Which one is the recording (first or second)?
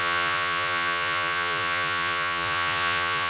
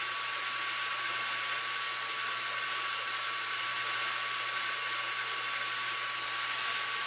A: second